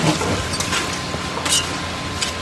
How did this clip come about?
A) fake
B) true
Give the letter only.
B